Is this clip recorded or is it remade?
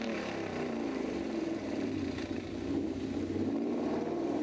remade